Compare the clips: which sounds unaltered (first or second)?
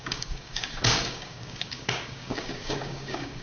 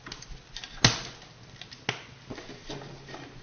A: second